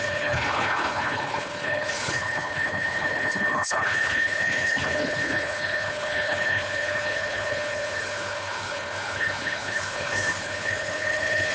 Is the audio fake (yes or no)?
yes